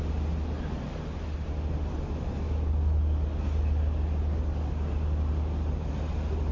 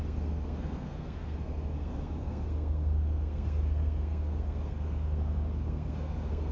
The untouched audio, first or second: first